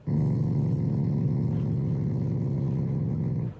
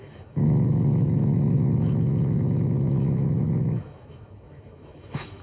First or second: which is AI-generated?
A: second